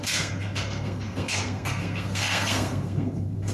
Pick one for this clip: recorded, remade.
remade